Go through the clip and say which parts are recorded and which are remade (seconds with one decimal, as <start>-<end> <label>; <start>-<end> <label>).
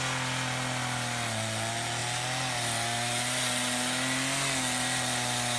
0.0-5.6 recorded